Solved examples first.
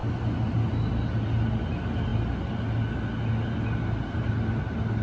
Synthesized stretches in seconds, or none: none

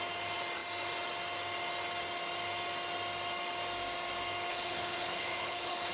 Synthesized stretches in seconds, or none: 4.5-5.9 (codec, HILCodec)

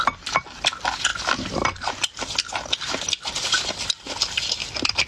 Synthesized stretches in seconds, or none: 1.1-2.2 (vocoder, BigVGAN v2)

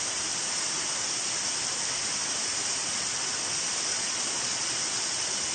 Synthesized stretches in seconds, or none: 3.9-4.7 (vocoder, Vocos)

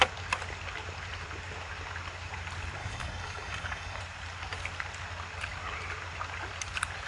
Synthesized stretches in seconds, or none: 2.8-4.0 (codec, DAC)